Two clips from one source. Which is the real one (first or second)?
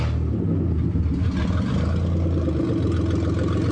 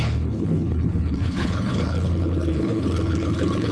first